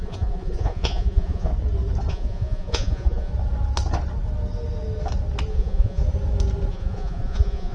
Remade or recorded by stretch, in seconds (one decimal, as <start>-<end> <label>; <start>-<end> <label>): 0.0-1.5 remade; 1.5-2.1 recorded; 2.1-3.3 remade; 3.3-5.5 recorded; 5.5-6.0 remade; 6.0-6.7 recorded; 6.7-7.7 remade